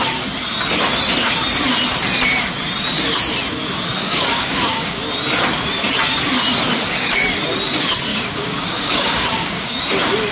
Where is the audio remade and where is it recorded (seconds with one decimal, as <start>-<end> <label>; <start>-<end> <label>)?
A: 0.0-4.0 recorded; 4.0-5.0 remade; 5.0-8.1 recorded; 8.1-9.8 remade; 9.8-10.3 recorded